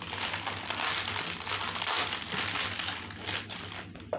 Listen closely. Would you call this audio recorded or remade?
recorded